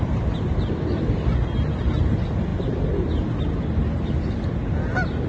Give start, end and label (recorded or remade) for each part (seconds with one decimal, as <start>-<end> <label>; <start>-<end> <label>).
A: 0.0-5.3 recorded